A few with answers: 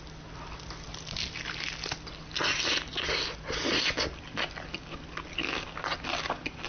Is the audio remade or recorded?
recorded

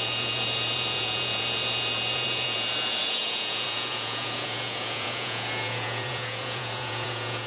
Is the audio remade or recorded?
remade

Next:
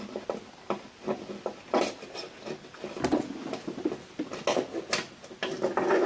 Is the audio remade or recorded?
recorded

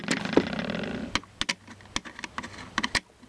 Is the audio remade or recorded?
recorded